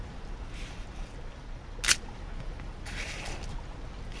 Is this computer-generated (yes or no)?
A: no